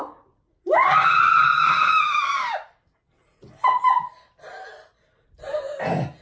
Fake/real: real